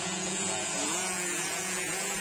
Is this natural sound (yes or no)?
no